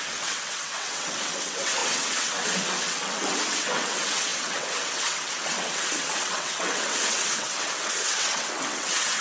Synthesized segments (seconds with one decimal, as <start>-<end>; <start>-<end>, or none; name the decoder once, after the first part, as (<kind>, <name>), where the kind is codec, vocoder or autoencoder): 0.0-9.2 (vocoder, WaveNeXt)